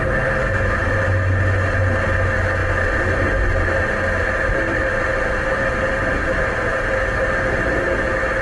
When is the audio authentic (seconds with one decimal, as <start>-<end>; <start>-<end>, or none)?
0.0-8.4